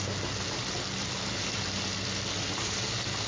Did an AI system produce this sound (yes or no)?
no